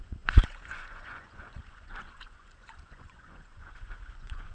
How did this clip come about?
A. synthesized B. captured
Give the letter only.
A